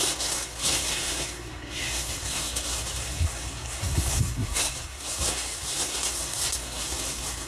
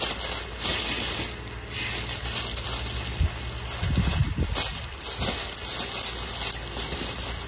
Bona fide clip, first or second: second